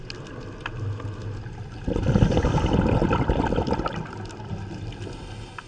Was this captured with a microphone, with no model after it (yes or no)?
yes